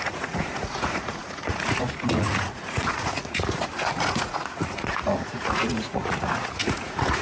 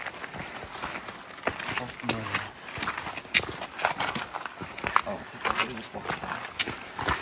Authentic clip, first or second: second